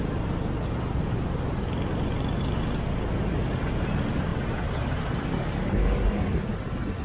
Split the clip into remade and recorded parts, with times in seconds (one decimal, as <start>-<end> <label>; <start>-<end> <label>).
0.0-7.0 recorded